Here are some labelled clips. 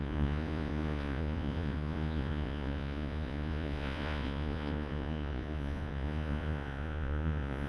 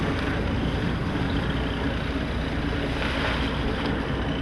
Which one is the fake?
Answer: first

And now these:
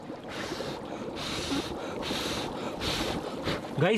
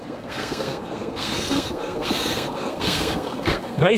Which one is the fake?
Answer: second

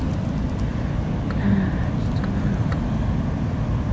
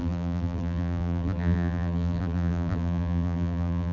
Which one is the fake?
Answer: second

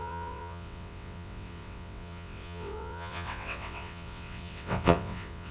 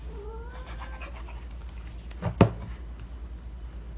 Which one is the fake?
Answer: first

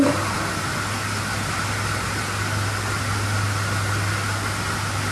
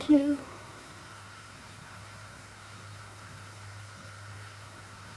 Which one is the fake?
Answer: second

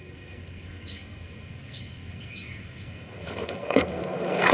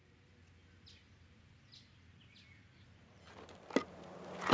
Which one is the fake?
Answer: first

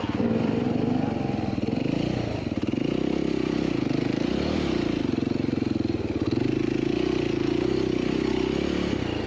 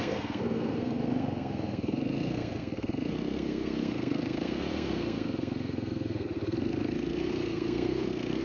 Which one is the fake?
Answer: second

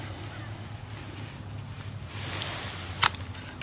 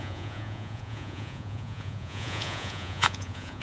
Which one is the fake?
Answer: second